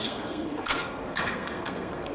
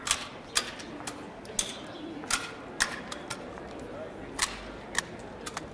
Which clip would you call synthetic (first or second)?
first